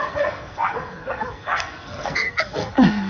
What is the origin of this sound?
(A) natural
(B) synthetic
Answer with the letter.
B